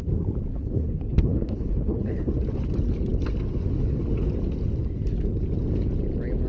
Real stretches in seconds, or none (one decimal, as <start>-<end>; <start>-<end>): 0.0-0.5; 2.3-6.5